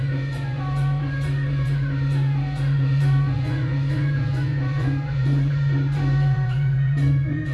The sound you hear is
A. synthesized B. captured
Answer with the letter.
A